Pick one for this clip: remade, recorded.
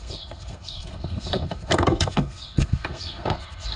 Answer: remade